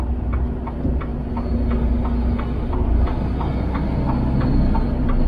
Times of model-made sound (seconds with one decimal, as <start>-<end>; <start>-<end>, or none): none